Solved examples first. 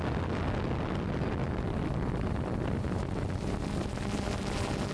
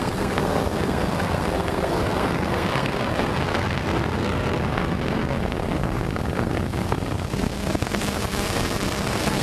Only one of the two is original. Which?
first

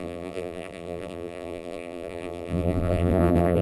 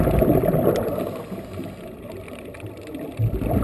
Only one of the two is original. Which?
second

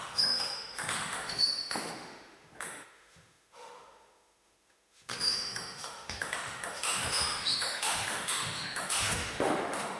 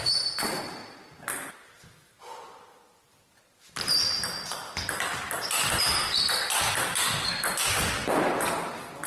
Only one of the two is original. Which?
second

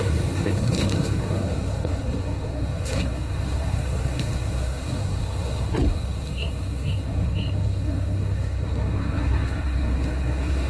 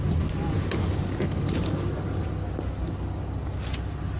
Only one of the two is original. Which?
second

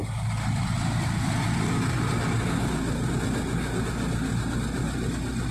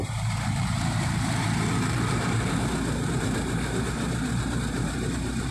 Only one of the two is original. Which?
first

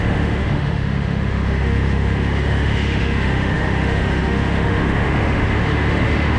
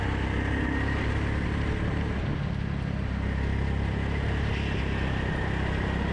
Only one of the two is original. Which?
second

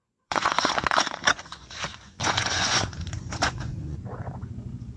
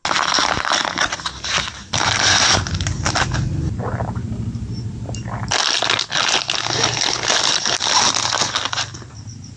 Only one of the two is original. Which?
second